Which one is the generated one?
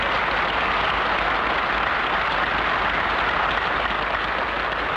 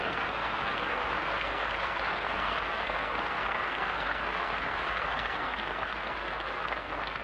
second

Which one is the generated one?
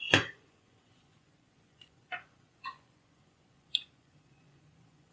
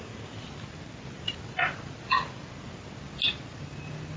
first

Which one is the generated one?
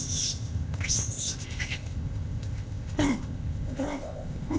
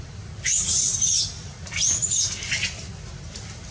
first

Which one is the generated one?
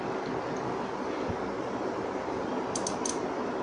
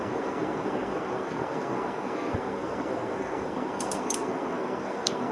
second